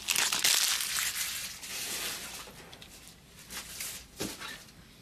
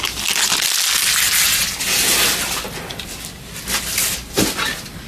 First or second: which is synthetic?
first